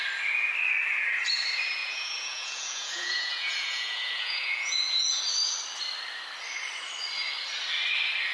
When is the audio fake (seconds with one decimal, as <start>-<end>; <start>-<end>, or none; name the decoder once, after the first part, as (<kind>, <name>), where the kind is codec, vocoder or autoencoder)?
1.8-5.2 (vocoder, Vocos)

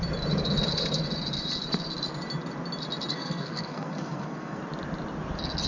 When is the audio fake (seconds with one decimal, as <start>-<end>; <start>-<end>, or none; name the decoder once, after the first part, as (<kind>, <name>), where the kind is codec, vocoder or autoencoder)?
3.1-4.6 (codec, SNAC)

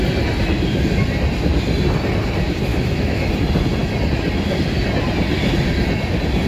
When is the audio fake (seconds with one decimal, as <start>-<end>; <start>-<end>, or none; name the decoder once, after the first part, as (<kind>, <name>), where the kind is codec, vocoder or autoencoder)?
2.7-3.3 (autoencoder, DAC-VAE)

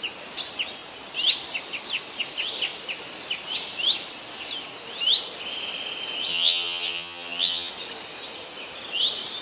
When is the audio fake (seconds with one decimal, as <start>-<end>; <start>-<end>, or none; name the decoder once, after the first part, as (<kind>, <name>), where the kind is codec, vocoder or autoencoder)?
6.3-7.7 (vocoder, HiFi-GAN)

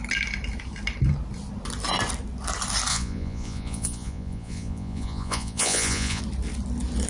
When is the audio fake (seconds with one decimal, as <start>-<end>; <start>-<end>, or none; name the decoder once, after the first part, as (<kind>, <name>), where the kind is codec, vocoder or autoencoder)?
2.9-6.2 (vocoder, Vocos)

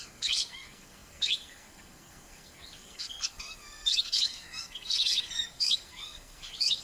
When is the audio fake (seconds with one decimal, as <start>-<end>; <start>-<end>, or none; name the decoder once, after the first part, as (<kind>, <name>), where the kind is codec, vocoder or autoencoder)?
0.0-6.8 (codec, SNAC)